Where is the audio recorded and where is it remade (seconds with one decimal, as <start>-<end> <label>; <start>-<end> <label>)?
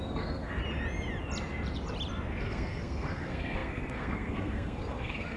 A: 0.0-0.6 remade; 0.6-2.4 recorded; 2.4-5.4 remade